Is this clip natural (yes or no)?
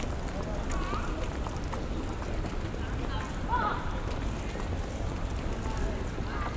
yes